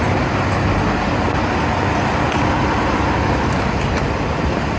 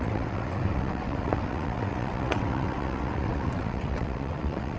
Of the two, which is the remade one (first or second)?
second